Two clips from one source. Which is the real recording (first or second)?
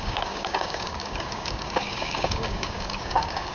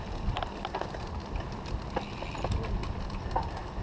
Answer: second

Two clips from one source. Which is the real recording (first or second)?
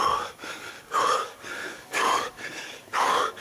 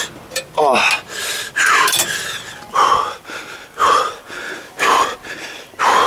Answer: second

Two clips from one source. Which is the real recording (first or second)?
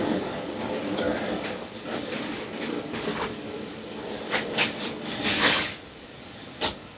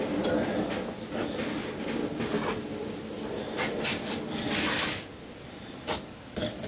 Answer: second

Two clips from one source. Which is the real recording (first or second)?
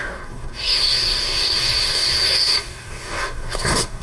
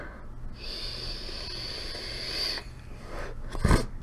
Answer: second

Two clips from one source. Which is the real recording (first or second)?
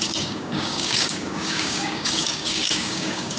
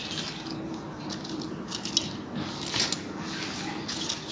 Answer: second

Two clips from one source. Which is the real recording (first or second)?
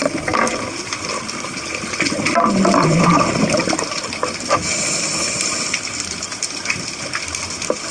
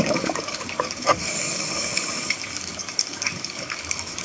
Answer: first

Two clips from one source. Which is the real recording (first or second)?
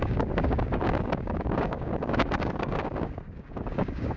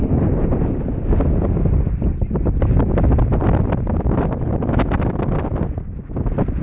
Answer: second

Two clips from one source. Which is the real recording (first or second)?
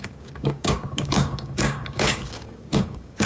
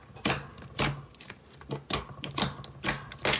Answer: second